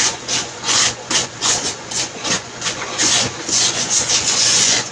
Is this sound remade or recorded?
remade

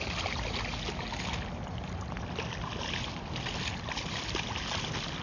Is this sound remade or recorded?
recorded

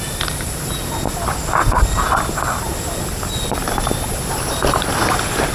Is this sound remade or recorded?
recorded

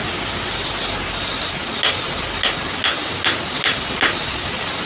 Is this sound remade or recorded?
recorded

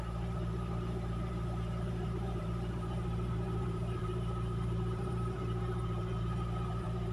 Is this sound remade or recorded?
remade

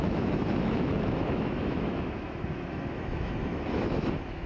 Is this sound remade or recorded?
remade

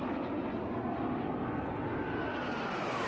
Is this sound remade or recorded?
recorded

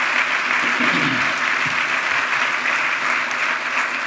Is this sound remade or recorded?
recorded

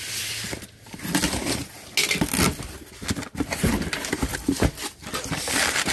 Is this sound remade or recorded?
recorded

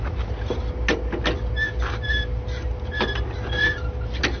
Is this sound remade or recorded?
recorded